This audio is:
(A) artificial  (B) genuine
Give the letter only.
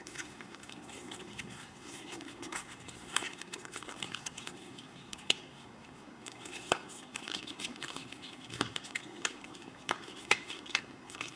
A